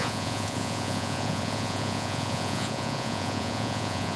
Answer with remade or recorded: remade